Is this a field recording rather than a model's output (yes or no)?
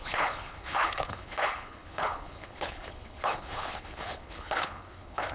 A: no